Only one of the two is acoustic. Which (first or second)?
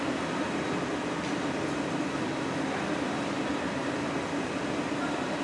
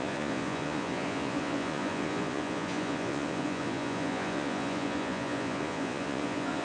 first